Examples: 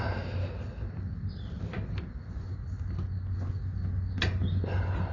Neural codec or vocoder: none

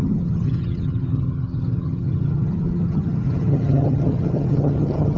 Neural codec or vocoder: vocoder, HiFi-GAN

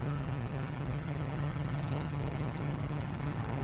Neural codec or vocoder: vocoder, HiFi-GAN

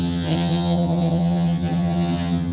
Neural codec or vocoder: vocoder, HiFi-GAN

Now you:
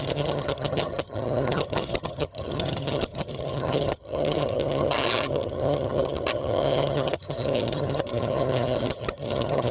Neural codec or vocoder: vocoder, HiFi-GAN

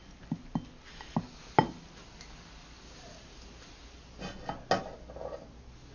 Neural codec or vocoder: none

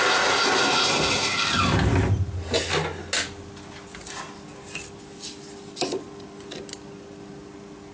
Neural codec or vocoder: none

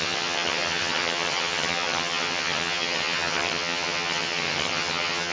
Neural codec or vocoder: vocoder, HiFi-GAN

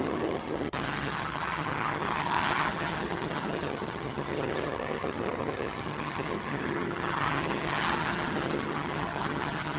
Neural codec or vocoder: vocoder, HiFi-GAN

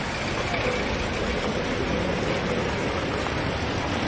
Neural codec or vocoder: none